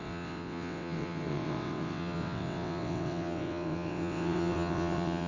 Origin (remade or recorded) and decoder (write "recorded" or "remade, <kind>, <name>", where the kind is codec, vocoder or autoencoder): remade, vocoder, WaveNeXt